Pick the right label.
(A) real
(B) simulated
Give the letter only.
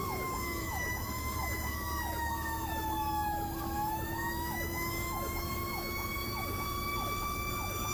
B